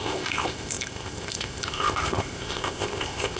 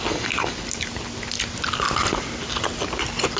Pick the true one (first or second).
second